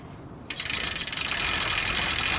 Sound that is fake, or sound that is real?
real